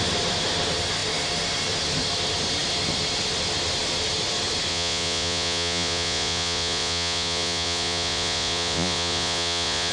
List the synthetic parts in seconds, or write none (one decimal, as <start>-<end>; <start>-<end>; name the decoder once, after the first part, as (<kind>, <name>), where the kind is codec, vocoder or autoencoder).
4.7-9.9 (vocoder, Vocos)